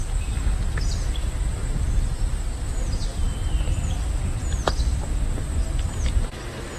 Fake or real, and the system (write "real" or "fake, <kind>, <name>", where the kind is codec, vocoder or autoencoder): real